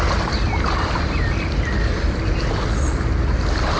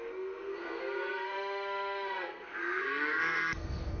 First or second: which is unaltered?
first